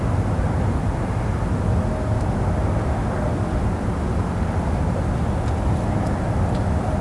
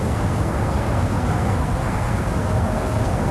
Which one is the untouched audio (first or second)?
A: first